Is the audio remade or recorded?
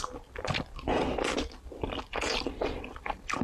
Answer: recorded